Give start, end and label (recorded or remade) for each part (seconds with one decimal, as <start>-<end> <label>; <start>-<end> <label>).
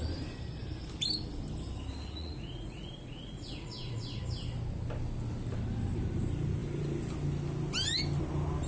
0.0-2.0 recorded; 2.0-4.2 remade; 4.2-8.7 recorded